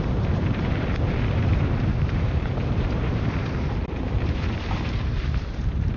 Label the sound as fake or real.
fake